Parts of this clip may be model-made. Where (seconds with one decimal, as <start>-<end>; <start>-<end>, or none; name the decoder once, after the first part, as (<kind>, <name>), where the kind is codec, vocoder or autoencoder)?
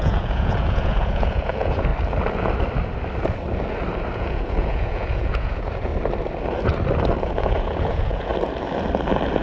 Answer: 0.0-1.9 (vocoder, Vocos); 4.2-5.9; 7.2-8.3